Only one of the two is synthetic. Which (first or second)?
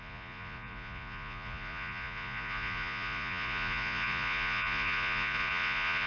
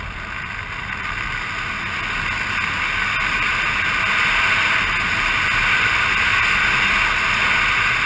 first